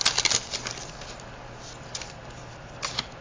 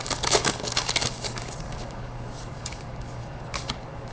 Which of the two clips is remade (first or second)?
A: second